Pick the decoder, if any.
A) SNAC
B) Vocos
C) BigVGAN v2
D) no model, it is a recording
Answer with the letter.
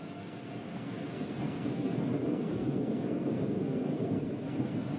A